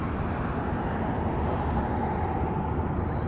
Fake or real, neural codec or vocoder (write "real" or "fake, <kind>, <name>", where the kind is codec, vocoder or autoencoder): real